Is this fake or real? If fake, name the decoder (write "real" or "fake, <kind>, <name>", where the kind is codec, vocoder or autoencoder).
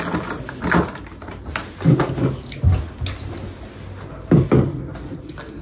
real